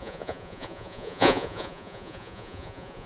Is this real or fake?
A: fake